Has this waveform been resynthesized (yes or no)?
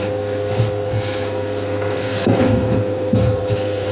yes